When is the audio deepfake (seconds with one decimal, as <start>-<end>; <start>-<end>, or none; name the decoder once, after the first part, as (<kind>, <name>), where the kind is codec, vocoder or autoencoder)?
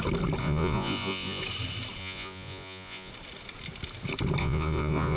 0.4-1.4 (vocoder, Vocos); 2.0-3.1; 4.4-5.2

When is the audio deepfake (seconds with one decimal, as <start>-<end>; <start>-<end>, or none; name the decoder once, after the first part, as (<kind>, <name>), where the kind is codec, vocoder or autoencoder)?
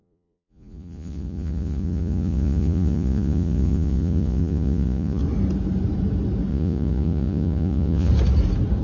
0.0-5.2 (vocoder, Vocos); 6.5-8.1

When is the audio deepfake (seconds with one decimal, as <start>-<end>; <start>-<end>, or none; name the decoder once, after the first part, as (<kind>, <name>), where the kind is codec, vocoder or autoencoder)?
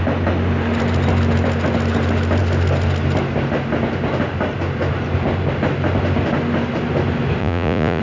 7.4-8.0 (vocoder, Vocos)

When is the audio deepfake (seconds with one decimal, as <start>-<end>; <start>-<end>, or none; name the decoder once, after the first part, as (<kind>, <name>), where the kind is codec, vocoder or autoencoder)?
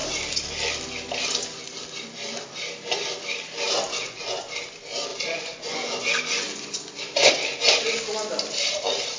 4.0-4.5 (vocoder, Vocos); 5.1-7.3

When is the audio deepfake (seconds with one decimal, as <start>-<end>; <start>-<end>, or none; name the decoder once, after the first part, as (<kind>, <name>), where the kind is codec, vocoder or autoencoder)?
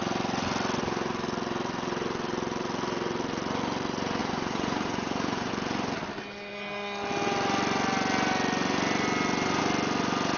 4.2-5.5 (vocoder, Vocos)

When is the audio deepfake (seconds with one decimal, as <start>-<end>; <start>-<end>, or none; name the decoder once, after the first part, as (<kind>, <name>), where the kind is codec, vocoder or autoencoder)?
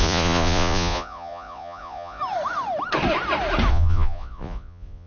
0.0-2.2 (vocoder, Vocos); 3.7-5.1